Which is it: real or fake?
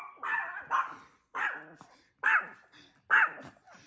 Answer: real